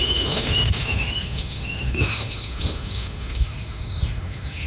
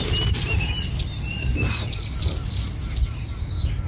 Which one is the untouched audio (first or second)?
second